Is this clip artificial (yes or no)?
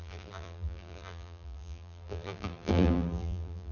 yes